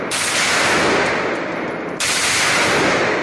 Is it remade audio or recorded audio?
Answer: recorded